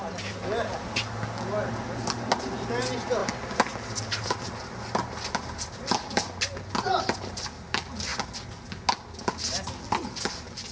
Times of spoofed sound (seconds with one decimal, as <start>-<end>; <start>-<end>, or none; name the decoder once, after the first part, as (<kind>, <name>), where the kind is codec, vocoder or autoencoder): none